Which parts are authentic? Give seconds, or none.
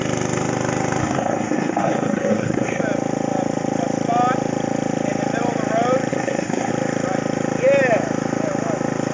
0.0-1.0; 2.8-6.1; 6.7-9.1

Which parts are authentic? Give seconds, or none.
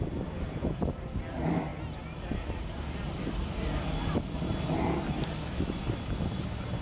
0.0-6.8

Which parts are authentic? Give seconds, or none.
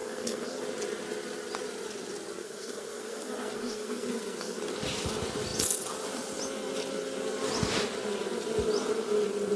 0.6-2.4; 4.6-9.6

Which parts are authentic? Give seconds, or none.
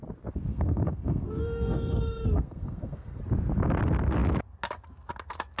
0.0-0.5; 3.2-5.6